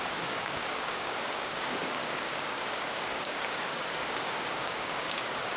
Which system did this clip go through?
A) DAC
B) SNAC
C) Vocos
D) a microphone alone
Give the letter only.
A